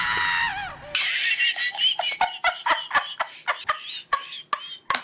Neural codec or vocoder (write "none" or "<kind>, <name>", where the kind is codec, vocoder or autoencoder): none